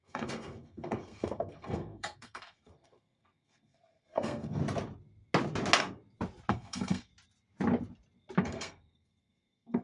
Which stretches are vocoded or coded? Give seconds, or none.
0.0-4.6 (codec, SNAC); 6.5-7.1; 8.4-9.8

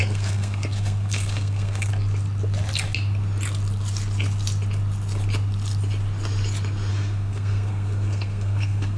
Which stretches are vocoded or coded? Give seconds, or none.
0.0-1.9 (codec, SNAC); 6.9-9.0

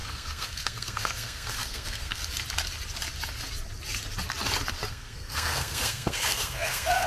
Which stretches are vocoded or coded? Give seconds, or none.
0.0-2.2 (codec, SNAC); 4.9-7.1